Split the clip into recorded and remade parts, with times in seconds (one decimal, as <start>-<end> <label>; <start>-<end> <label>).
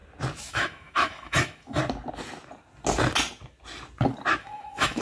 0.0-0.5 recorded; 0.5-1.8 remade; 1.8-4.4 recorded; 4.4-5.0 remade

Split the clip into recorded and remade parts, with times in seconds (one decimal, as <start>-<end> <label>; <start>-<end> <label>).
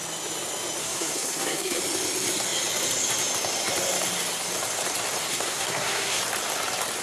0.0-0.8 recorded; 0.8-1.8 remade; 1.8-5.3 recorded; 5.3-6.2 remade; 6.2-7.0 recorded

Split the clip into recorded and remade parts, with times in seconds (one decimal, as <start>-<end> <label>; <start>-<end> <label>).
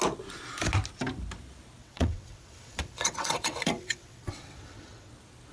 0.0-1.8 recorded; 1.8-5.1 remade; 5.1-5.5 recorded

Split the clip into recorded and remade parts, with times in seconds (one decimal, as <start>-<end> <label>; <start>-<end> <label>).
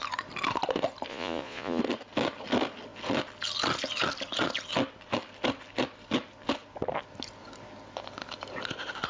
0.0-1.1 recorded; 1.1-1.8 remade; 1.8-9.1 recorded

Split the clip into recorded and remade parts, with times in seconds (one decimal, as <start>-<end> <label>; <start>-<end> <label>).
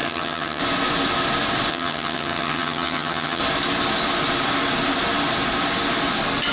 0.0-0.6 remade; 0.6-1.7 recorded; 1.7-3.4 remade; 3.4-6.5 recorded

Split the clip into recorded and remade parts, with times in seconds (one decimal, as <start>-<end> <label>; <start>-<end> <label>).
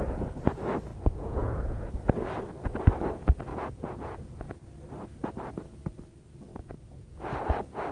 0.0-0.9 recorded; 0.9-1.9 remade; 1.9-3.5 recorded; 3.5-4.4 remade; 4.4-6.5 recorded; 6.5-7.2 remade; 7.2-7.9 recorded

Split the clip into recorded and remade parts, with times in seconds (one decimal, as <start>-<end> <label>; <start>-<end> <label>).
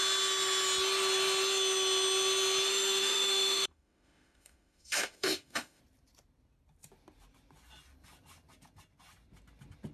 0.0-2.7 recorded; 2.7-5.8 remade; 5.8-9.9 recorded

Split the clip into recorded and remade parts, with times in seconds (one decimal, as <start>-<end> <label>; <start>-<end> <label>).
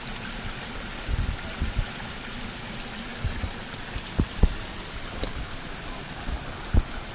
0.0-7.1 recorded